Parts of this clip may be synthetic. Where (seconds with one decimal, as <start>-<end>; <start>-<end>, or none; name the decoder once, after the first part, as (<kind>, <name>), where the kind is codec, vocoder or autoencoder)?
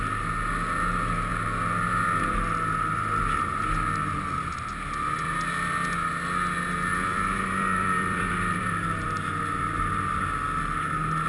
6.9-9.9 (vocoder, BigVGAN v2)